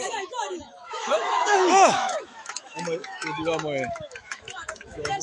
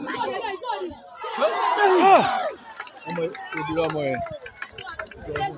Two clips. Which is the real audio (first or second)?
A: second